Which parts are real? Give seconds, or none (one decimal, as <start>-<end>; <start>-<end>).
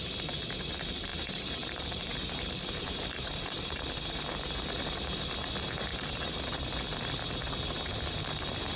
0.0-1.1; 4.2-5.9; 6.4-8.8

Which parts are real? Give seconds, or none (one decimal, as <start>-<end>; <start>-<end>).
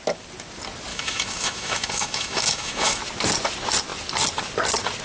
0.0-0.9; 3.0-5.0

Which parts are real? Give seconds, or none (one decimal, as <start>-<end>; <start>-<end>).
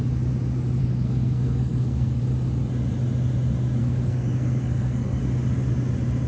0.0-0.8; 2.2-3.8; 5.2-6.3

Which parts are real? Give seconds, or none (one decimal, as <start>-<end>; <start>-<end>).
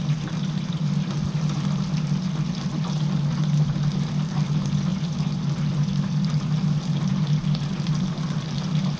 0.0-9.0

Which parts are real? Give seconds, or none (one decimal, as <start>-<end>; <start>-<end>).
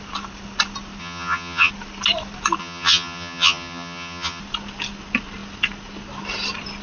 0.0-1.0; 1.7-2.6; 4.4-6.8